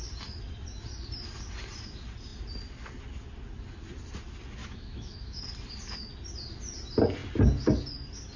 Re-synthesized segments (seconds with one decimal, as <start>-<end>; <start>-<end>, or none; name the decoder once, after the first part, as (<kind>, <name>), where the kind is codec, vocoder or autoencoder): 4.6-5.4 (autoencoder, DAC-VAE)